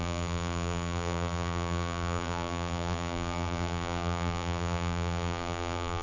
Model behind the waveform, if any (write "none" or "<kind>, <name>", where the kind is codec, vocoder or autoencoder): vocoder, BigVGAN v2